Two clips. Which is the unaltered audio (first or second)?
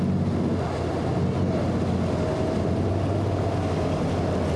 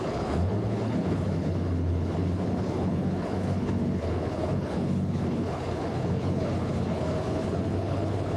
first